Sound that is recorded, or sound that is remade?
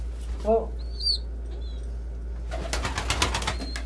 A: recorded